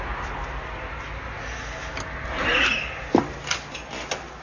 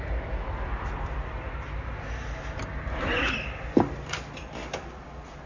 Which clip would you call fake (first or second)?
second